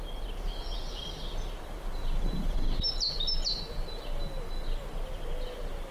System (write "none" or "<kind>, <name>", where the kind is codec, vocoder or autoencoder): none